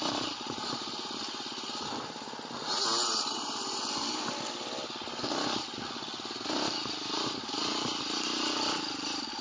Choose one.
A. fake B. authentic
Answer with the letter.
B